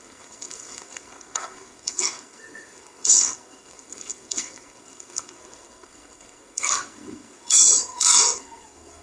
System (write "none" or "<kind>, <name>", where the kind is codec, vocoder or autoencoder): codec, SNAC